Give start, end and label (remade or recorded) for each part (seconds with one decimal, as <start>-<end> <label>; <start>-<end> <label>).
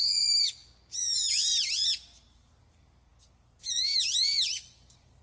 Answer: 0.0-5.2 recorded